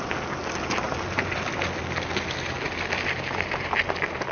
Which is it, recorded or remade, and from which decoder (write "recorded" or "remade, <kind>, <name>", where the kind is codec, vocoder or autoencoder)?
recorded